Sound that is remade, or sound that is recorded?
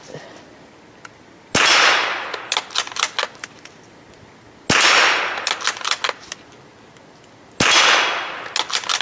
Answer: recorded